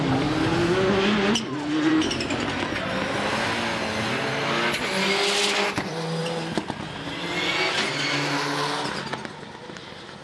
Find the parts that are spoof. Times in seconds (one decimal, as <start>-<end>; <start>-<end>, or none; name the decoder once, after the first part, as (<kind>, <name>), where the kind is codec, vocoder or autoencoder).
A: 6.2-7.2 (vocoder, BigVGAN v2)